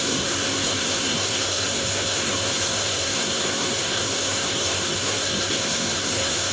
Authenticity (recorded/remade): remade